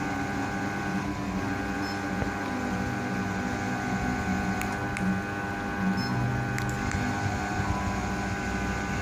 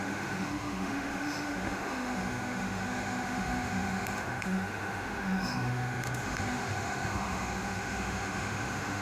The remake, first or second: second